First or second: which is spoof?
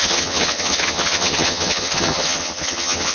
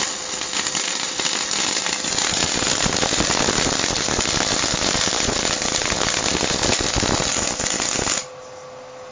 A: first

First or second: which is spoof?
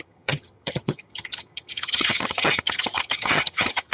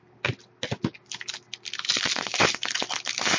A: first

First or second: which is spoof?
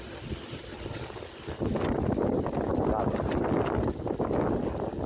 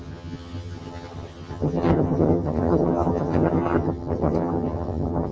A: second